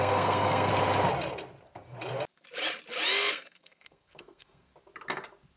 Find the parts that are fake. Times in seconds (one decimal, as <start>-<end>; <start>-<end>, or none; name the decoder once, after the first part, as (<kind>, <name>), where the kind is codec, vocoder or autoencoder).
0.0-0.7 (codec, SNAC); 3.3-4.7